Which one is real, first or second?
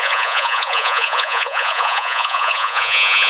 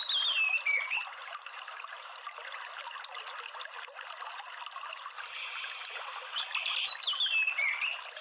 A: second